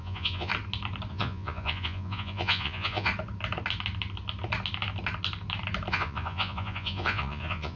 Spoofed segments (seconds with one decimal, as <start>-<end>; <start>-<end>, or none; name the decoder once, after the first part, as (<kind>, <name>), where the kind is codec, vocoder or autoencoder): 0.0-0.5 (vocoder, Vocos); 1.1-3.1; 5.9-7.8

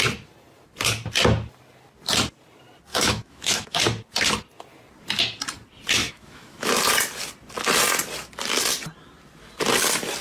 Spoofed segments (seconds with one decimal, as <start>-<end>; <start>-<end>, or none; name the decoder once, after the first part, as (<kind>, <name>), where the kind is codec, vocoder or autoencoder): 2.9-3.8 (autoencoder, DAC-VAE); 6.0-6.7

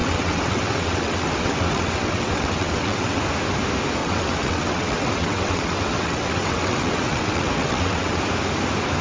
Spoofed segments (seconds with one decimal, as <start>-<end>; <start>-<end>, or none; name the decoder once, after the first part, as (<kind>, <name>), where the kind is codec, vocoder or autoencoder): 0.0-3.2 (vocoder, WaveNeXt); 4.0-8.2

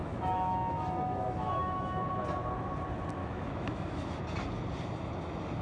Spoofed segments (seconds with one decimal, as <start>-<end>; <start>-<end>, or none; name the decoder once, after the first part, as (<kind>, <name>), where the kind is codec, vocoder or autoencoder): 0.0-2.1 (autoencoder, DAC-VAE); 3.2-4.2

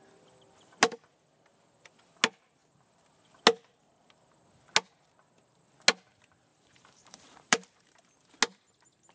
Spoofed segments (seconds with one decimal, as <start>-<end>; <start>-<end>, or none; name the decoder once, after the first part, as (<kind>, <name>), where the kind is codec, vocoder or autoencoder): 6.5-8.0 (vocoder, BigVGAN v2)

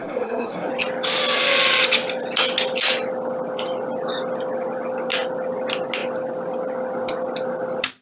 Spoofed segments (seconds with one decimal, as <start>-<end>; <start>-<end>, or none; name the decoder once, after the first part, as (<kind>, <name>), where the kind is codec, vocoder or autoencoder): 0.0-0.7 (codec, SNAC)